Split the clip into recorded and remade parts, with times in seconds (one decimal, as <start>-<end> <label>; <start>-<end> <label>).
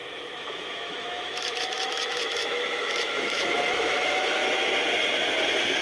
0.0-4.4 remade; 4.4-5.8 recorded